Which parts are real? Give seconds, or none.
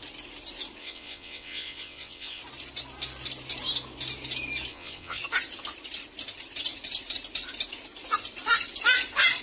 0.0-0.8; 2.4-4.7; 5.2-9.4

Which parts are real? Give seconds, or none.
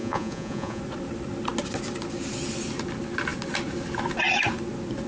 0.8-5.1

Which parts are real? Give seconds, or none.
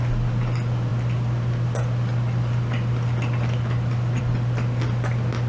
0.0-5.5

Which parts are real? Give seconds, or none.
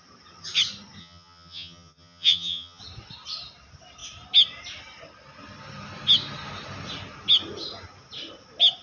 0.0-1.0; 2.8-8.8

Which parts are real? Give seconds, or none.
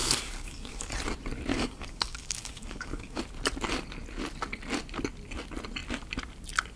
0.9-1.5; 3.2-6.8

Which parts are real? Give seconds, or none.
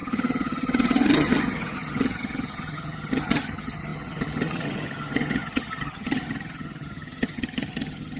none